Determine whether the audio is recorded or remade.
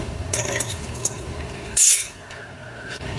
remade